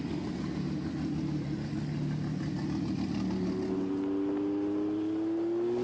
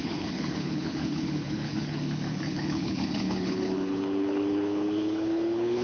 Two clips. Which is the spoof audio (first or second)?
second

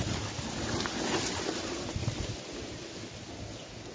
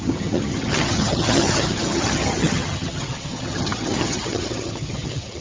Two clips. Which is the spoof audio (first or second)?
second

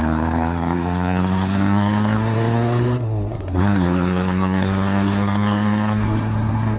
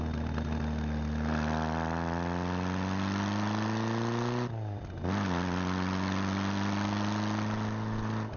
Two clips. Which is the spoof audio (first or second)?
first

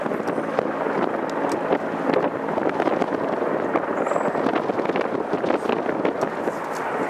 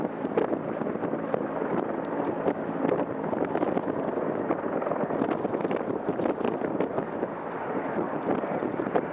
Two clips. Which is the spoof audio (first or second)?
second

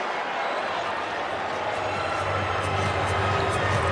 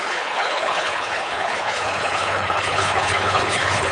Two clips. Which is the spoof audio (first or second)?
second